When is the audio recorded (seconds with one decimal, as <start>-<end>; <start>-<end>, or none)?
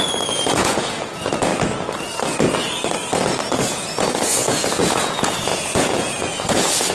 1.5-3.7